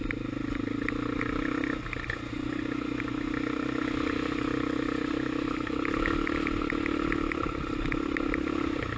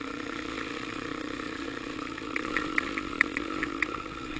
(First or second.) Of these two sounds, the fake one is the second